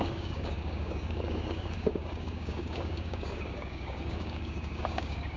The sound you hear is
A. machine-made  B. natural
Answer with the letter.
A